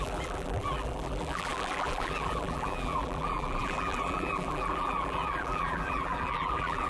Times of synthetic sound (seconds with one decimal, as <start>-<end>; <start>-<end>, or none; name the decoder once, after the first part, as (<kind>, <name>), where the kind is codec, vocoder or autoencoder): 0.0-6.9 (vocoder, BigVGAN v2)